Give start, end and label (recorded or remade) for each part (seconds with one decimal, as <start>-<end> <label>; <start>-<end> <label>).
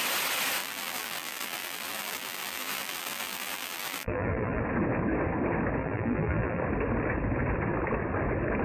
0.0-0.6 recorded; 0.6-4.6 remade; 4.6-5.8 recorded; 5.8-6.6 remade; 6.6-8.6 recorded